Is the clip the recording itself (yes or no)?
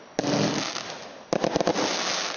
yes